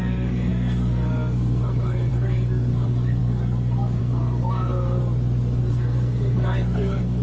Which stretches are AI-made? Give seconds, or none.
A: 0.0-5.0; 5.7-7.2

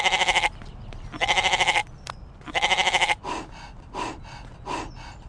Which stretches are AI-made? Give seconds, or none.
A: none

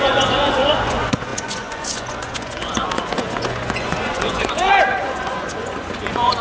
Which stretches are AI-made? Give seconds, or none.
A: 0.0-6.4

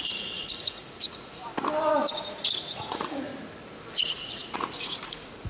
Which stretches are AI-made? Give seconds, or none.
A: 0.0-1.4; 2.1-3.3; 3.9-5.5

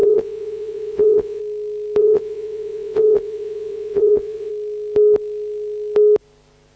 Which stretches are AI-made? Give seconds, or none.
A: 0.0-1.4; 2.0-4.5